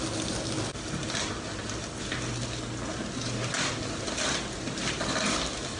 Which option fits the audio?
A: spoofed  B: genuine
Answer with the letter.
B